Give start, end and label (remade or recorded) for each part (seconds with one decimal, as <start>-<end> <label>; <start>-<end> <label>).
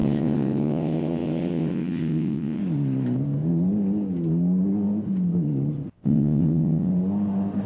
0.0-2.6 remade; 2.6-5.9 recorded; 5.9-6.9 remade; 6.9-7.7 recorded